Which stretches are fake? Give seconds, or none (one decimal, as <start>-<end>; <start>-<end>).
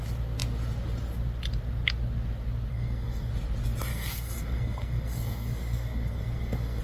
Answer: 2.7-3.3; 3.9-6.8